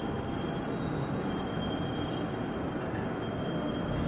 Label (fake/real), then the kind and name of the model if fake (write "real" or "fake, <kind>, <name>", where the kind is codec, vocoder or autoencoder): real